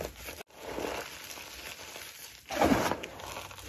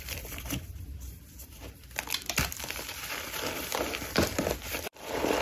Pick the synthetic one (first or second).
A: second